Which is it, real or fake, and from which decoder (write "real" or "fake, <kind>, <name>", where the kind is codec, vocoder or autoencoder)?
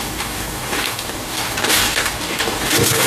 fake, codec, DAC